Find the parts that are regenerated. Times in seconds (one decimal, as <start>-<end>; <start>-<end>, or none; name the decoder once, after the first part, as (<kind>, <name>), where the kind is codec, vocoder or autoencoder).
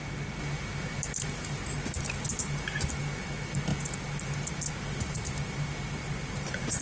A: none